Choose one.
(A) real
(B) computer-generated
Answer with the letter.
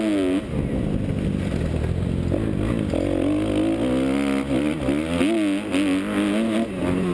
A